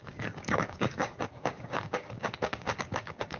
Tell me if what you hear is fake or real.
fake